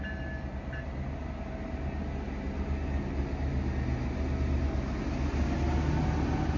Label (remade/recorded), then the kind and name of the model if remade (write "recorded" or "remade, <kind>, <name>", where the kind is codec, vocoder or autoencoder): recorded